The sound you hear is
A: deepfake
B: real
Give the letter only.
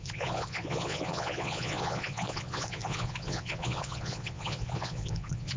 A